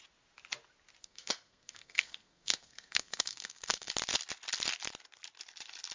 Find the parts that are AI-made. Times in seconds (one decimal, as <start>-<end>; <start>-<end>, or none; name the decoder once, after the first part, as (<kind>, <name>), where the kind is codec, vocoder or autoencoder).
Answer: 1.0-3.9 (codec, SNAC)